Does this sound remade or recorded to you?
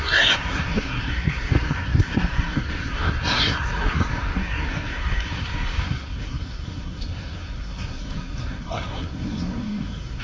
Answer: remade